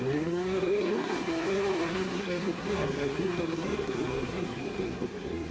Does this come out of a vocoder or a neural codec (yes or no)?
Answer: yes